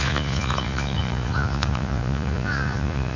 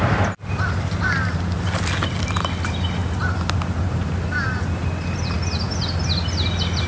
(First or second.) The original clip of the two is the second